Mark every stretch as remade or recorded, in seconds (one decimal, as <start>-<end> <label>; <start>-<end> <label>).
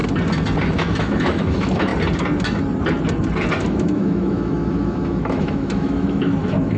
0.0-0.6 recorded; 0.6-1.9 remade; 1.9-3.6 recorded; 3.6-6.8 remade